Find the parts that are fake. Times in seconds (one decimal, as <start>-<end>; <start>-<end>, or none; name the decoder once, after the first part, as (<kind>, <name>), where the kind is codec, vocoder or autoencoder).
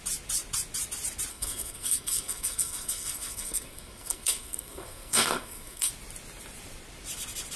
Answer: 1.3-5.9 (codec, SNAC)